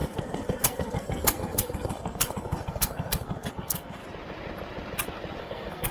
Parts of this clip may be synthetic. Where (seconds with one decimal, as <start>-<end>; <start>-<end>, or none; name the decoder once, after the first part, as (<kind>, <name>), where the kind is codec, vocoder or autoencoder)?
0.0-4.0 (codec, SNAC); 5.4-5.9